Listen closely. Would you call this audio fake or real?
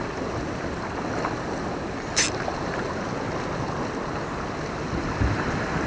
real